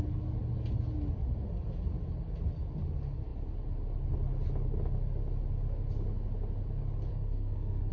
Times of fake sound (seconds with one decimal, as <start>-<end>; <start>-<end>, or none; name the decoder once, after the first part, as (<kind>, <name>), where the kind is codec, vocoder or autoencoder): 7.1-7.9 (codec, SNAC)